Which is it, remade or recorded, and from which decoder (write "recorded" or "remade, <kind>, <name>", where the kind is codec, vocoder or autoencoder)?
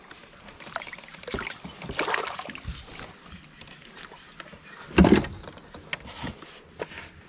recorded